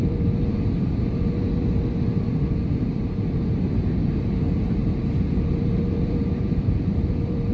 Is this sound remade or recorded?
remade